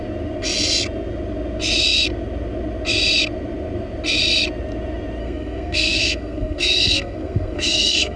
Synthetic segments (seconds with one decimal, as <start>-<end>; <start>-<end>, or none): 5.2-8.2